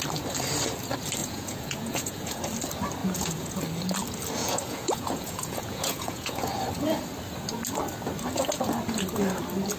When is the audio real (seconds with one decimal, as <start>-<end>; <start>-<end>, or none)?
0.0-1.2; 2.4-3.0; 3.6-4.4; 6.5-9.8